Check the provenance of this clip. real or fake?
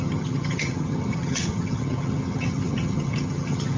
fake